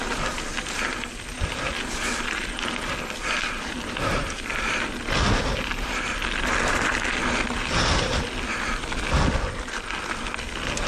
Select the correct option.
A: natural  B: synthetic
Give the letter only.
A